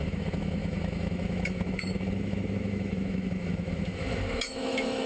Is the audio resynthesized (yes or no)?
yes